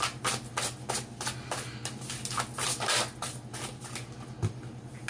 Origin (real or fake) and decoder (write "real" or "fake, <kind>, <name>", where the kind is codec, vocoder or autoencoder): real